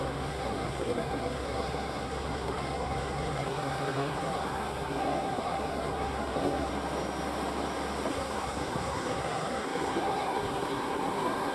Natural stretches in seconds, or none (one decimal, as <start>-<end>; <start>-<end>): 6.7-8.1